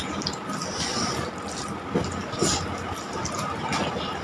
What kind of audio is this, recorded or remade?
recorded